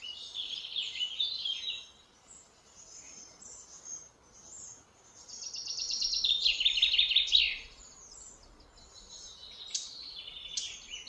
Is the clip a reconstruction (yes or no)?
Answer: no